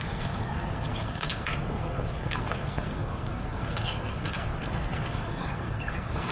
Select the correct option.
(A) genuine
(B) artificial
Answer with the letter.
B